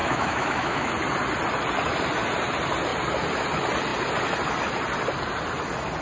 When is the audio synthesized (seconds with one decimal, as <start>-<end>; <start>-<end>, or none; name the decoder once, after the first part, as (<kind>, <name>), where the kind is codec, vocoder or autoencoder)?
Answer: 0.0-0.9 (autoencoder, DAC-VAE)